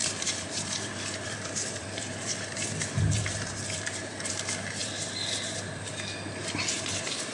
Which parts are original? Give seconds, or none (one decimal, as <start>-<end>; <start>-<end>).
4.3-4.8; 5.9-7.3